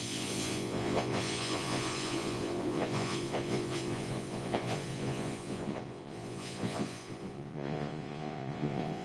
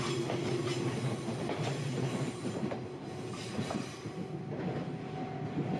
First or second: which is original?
second